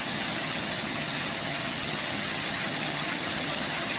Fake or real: fake